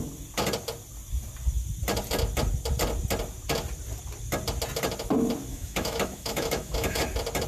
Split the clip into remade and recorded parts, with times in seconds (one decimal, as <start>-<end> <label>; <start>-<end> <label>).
0.0-5.5 recorded; 5.5-7.0 remade; 7.0-7.5 recorded

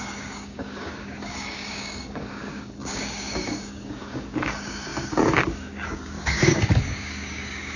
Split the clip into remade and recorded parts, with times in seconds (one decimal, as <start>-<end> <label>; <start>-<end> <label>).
0.0-7.8 remade

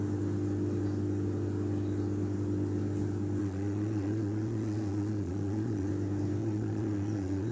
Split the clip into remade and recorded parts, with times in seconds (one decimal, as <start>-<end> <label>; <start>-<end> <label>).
0.0-3.4 recorded; 3.4-5.9 remade; 5.9-6.4 recorded; 6.4-7.5 remade

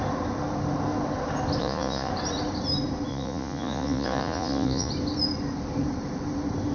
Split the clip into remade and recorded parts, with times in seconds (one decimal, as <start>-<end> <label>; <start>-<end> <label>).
0.0-1.6 recorded; 1.6-2.1 remade; 2.1-3.1 recorded; 3.1-4.9 remade; 4.9-6.7 recorded

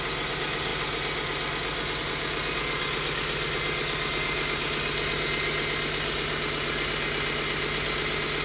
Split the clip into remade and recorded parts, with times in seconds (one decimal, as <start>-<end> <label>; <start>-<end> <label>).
0.0-8.4 recorded

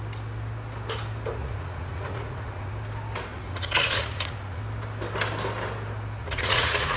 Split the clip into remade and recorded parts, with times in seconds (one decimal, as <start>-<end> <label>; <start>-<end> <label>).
0.0-1.4 recorded; 1.4-2.7 remade; 2.7-3.3 recorded; 3.3-4.6 remade; 4.6-6.2 recorded; 6.2-7.0 remade

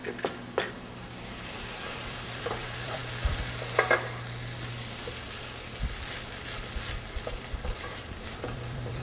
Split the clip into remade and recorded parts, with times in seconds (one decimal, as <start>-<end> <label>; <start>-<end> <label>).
0.0-1.2 recorded; 1.2-3.0 remade; 3.0-7.3 recorded; 7.3-9.0 remade